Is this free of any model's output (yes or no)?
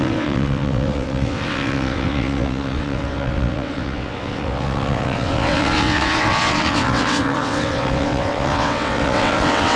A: no